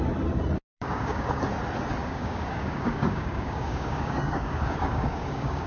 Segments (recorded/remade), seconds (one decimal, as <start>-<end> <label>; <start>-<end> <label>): 0.0-0.7 recorded; 0.7-1.4 remade; 1.4-2.0 recorded; 2.0-5.7 remade